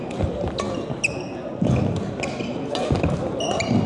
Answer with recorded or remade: recorded